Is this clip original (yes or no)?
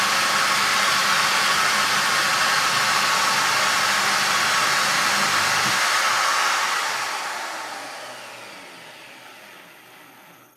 yes